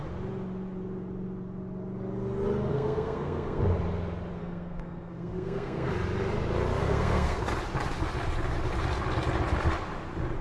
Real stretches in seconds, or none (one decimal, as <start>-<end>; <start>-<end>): 0.0-2.7; 3.6-4.4; 5.9-6.8; 7.4-10.4